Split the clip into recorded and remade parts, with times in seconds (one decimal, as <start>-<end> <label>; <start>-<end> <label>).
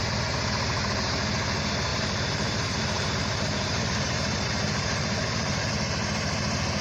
0.0-1.9 recorded; 1.9-5.7 remade; 5.7-6.8 recorded